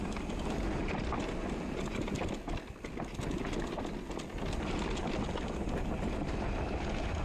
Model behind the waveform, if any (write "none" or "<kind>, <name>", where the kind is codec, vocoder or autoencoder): none